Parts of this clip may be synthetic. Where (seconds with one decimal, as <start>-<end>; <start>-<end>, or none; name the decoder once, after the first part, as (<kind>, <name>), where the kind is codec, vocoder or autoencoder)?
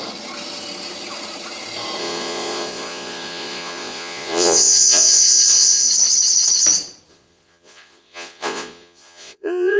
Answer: 2.0-5.9 (vocoder, Vocos); 7.1-9.8